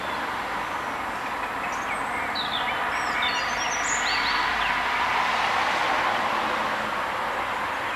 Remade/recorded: recorded